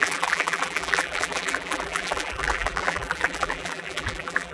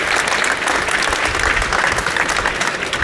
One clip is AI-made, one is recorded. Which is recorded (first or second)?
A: second